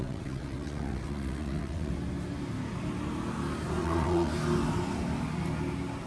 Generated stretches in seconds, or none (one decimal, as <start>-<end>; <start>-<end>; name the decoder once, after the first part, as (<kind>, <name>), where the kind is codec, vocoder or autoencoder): 0.0-1.9 (vocoder, WaveNeXt); 3.8-4.3